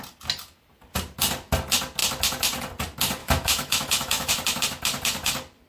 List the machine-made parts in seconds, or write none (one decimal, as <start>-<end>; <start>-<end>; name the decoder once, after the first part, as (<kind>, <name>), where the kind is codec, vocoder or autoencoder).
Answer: 3.2-4.3 (autoencoder, DAC-VAE)